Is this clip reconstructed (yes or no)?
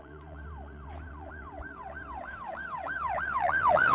yes